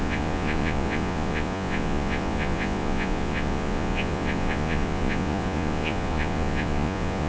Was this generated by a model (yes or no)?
yes